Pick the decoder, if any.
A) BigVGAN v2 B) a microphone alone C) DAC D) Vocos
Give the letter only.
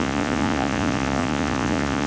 D